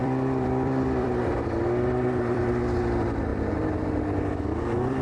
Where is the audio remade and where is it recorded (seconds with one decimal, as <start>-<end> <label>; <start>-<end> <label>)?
0.0-2.4 remade; 2.4-5.0 recorded